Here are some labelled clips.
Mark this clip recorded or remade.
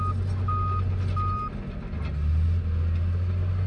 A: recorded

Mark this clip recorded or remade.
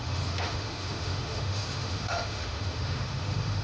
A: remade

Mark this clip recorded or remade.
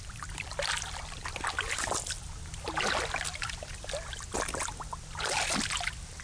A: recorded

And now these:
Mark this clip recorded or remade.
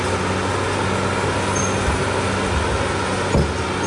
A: recorded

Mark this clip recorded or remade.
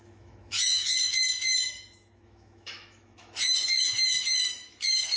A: remade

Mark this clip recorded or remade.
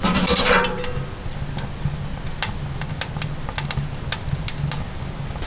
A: recorded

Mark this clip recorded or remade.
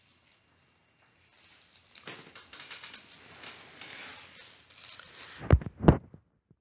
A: recorded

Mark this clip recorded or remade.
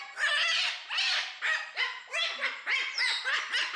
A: recorded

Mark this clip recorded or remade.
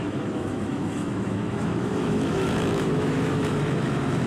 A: remade